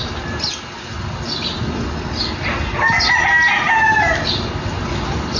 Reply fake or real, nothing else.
real